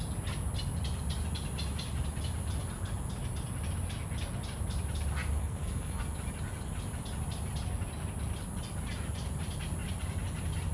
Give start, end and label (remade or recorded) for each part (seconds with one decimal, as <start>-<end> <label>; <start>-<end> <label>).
0.0-5.4 recorded; 5.4-6.0 remade; 6.0-10.7 recorded